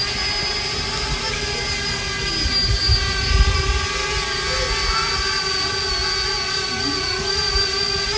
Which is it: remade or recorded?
recorded